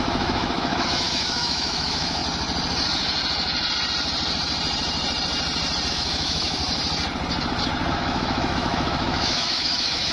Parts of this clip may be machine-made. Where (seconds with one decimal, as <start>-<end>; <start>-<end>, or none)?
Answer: 0.0-2.2; 5.9-6.6; 7.9-10.1